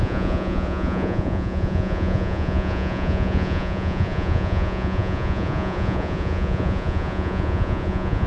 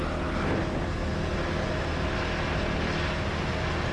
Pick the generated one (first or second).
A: first